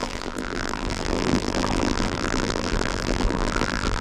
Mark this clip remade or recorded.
remade